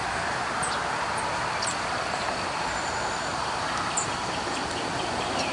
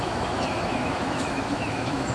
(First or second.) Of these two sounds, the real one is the first